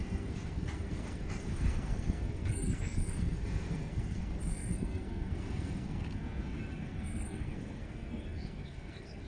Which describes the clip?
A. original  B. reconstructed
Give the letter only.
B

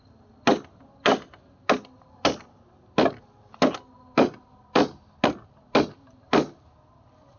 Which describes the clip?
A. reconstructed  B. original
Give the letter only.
B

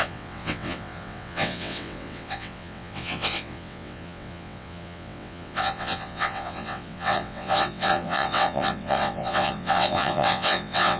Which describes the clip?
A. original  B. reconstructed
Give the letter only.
B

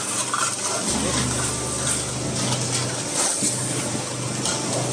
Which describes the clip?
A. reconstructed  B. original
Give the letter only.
B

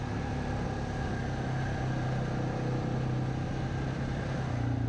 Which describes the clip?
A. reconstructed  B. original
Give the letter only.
B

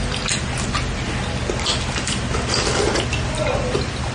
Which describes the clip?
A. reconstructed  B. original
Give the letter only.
B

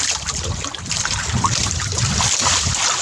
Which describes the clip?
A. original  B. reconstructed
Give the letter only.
A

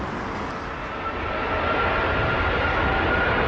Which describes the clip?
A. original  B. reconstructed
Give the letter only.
A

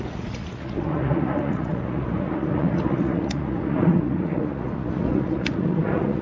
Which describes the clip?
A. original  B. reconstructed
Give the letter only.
B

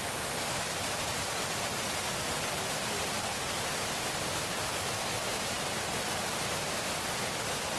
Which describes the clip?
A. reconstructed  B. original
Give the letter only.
B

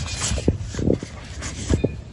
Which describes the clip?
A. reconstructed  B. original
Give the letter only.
B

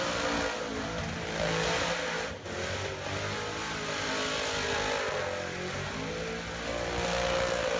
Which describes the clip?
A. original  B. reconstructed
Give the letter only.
A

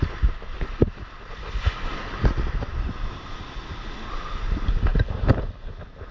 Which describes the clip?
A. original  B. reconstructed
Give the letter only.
A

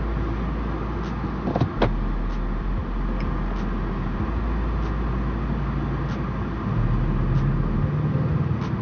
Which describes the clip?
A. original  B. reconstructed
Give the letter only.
A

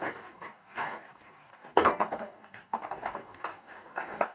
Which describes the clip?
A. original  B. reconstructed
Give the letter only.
B